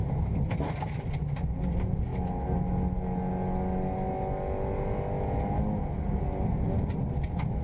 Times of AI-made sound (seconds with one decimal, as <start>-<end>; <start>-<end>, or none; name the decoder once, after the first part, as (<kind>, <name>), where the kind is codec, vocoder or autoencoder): none